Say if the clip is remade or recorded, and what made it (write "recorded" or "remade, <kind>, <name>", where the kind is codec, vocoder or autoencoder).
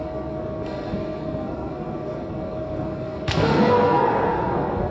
remade, codec, SNAC